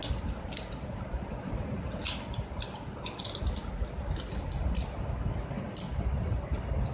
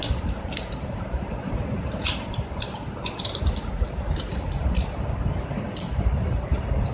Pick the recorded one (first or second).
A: first